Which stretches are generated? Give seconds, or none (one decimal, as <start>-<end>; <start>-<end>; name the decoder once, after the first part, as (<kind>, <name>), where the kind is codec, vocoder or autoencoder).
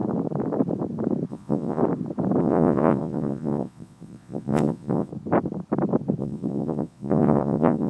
1.3-1.8 (vocoder, Vocos); 2.4-5.1; 6.2-7.9